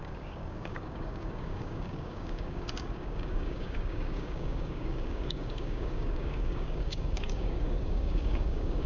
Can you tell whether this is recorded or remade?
remade